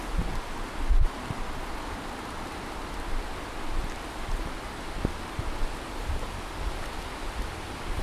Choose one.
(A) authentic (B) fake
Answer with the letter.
A